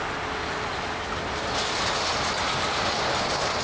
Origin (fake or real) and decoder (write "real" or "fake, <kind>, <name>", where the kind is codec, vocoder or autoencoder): real